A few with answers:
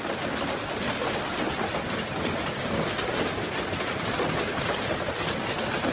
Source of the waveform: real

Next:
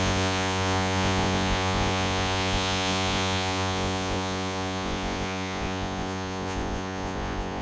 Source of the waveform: fake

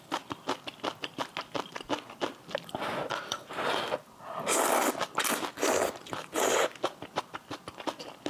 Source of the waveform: real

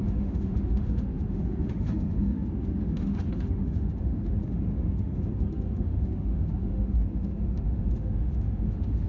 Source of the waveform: fake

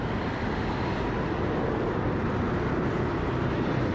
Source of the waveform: real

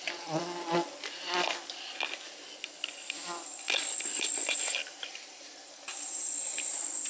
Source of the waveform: real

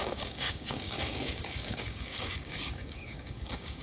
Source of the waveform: fake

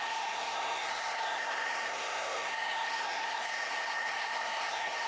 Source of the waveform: fake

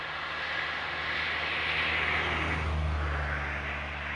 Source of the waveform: real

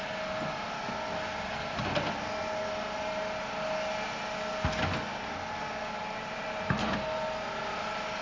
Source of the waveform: real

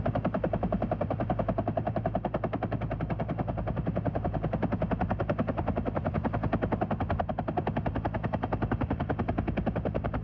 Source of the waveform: real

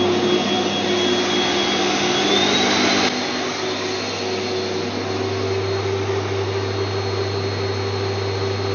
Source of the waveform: real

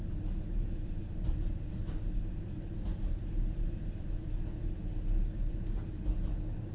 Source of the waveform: real